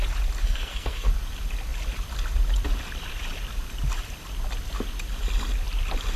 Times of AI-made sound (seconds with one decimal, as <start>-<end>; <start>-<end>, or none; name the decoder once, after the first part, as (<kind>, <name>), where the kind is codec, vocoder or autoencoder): 0.4-1.1 (codec, SNAC)